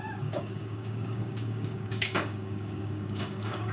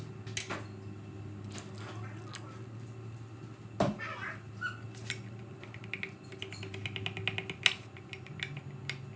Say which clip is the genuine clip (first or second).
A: second